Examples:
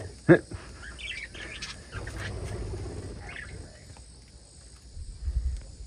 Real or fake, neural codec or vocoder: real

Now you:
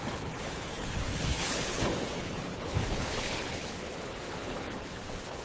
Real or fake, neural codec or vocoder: fake, codec, HILCodec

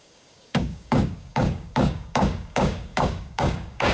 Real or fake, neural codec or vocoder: fake, codec, DAC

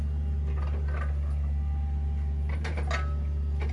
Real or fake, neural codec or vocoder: real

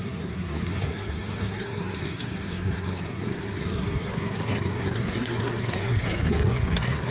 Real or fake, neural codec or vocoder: fake, codec, SNAC